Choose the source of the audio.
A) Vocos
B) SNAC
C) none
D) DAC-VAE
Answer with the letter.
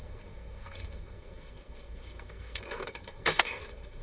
B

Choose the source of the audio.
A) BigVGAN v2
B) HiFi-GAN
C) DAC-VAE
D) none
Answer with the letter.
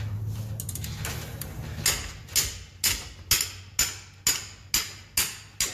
D